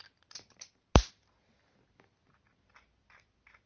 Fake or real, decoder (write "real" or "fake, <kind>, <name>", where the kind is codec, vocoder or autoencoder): real